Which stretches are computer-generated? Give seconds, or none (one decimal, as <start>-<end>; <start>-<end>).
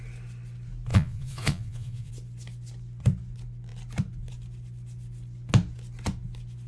0.9-2.1